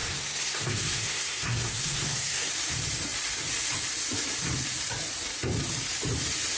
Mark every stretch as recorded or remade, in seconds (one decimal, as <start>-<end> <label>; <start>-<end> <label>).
0.0-2.5 remade; 2.5-6.6 recorded